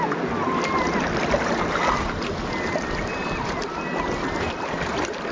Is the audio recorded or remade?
recorded